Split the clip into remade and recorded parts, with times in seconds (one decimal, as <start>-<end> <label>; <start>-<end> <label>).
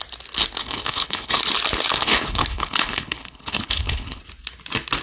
0.0-0.6 recorded; 0.6-1.4 remade; 1.4-1.9 recorded; 1.9-4.2 remade; 4.2-5.0 recorded